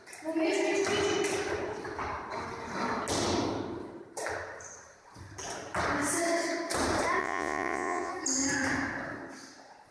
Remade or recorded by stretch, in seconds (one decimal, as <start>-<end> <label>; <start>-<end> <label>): 0.0-7.2 recorded; 7.2-8.1 remade; 8.1-9.9 recorded